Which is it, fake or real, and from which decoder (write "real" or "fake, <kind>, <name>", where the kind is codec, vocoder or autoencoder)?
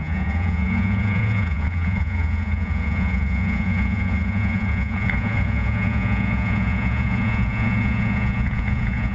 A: fake, vocoder, Vocos